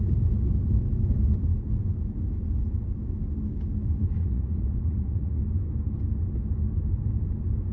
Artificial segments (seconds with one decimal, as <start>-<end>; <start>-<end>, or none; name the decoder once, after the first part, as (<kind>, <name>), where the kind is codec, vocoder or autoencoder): 4.2-5.4 (vocoder, Vocos)